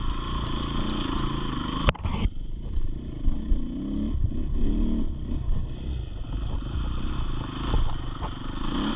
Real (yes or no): yes